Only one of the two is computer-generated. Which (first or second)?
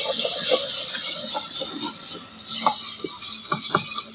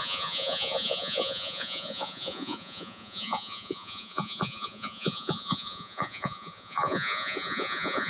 second